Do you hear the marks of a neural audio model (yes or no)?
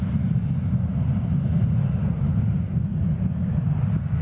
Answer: no